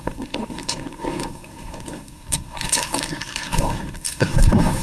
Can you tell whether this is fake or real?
fake